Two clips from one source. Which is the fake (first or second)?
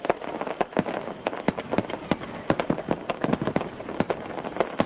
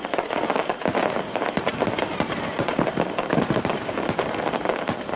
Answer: second